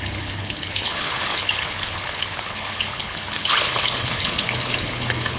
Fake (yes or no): yes